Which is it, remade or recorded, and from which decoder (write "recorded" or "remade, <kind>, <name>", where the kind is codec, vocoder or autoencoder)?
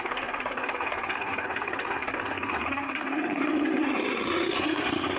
remade, codec, SNAC